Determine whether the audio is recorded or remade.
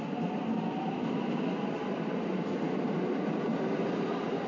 recorded